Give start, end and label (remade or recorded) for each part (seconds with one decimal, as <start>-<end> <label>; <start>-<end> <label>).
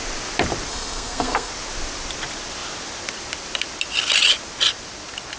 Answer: 0.0-0.7 recorded; 0.7-1.5 remade; 1.5-5.4 recorded